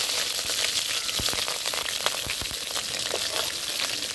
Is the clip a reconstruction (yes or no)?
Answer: no